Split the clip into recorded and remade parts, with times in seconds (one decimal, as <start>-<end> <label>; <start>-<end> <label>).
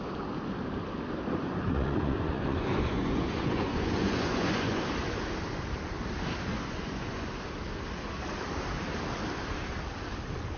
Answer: 0.0-1.4 recorded; 1.4-4.8 remade; 4.8-6.5 recorded; 6.5-7.3 remade; 7.3-10.6 recorded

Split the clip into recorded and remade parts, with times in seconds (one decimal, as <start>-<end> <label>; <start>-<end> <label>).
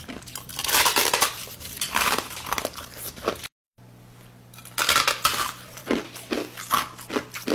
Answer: 0.0-0.5 recorded; 0.5-3.0 remade; 3.0-5.3 recorded; 5.3-5.9 remade; 5.9-7.5 recorded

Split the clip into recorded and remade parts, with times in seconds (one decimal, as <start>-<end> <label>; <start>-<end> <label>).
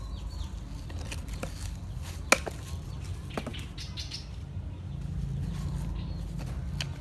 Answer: 0.0-7.0 recorded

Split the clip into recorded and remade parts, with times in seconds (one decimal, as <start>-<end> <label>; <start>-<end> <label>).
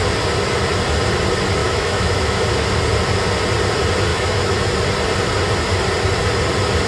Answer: 0.0-1.6 recorded; 1.6-2.4 remade; 2.4-4.1 recorded; 4.1-4.7 remade; 4.7-6.9 recorded